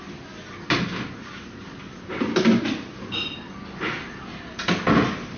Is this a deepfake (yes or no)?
no